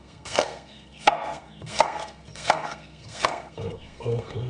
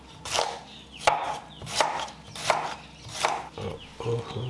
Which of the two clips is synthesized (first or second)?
first